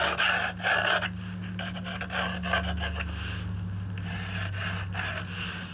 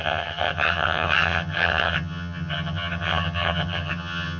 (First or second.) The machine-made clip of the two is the second